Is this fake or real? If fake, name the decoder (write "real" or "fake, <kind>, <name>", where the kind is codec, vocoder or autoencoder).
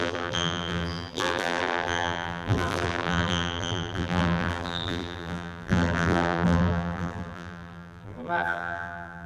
fake, vocoder, BigVGAN v2